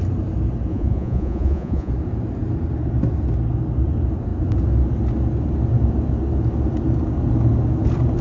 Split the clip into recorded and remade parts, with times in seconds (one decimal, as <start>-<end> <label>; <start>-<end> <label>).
0.0-0.7 recorded; 0.7-1.9 remade; 1.9-8.2 recorded